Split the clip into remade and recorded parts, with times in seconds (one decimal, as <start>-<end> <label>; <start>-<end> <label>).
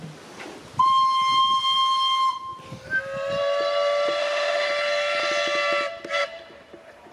0.0-4.2 recorded; 4.2-4.7 remade; 4.7-7.1 recorded